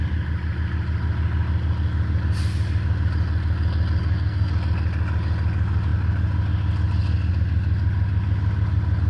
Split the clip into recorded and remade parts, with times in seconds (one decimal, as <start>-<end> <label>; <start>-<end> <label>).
0.0-4.0 recorded; 4.0-4.5 remade; 4.5-9.1 recorded